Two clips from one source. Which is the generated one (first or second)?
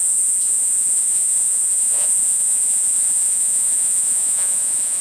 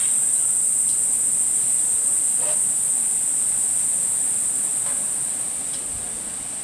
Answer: first